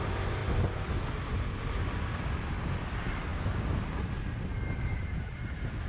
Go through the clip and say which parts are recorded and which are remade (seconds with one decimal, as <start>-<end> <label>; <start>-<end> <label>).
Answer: 0.0-5.9 recorded